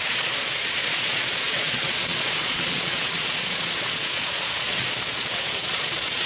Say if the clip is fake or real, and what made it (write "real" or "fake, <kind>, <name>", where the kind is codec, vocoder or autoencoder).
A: fake, vocoder, Vocos